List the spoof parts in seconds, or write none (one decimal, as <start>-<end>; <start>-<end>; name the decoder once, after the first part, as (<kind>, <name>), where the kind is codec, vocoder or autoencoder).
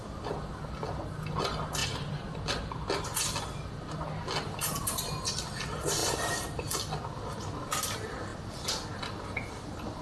none